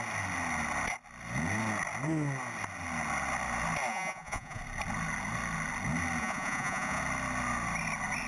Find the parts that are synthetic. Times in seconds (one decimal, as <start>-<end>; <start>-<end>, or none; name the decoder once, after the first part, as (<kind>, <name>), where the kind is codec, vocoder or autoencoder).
3.9-4.6 (vocoder, Vocos); 6.2-7.0